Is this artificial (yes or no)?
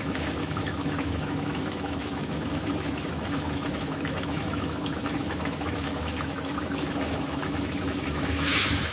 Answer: yes